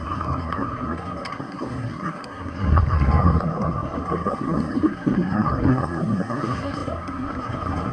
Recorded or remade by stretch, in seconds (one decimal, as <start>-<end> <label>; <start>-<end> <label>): 0.0-7.9 remade